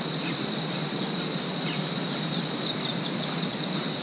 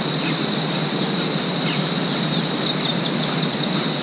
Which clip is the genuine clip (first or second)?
second